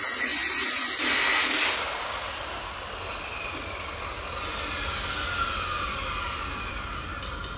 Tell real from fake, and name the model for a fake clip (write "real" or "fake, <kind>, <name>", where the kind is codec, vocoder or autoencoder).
real